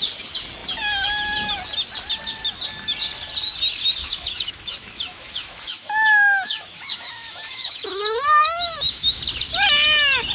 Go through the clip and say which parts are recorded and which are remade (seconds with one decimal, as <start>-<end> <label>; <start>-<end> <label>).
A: 0.0-4.0 recorded; 4.0-9.2 remade; 9.2-10.3 recorded